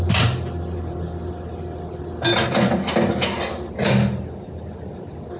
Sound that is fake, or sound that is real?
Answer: real